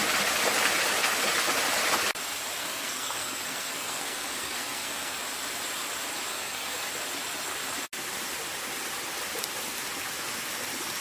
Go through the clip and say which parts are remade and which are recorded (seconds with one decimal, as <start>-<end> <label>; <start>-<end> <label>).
0.0-2.6 recorded; 2.6-5.2 remade; 5.2-6.3 recorded; 6.3-6.9 remade; 6.9-11.0 recorded